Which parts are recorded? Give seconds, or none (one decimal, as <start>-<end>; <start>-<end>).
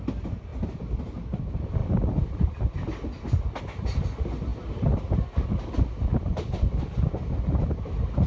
0.0-8.3